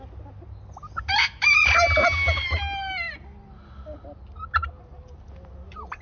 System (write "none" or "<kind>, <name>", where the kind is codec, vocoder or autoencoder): none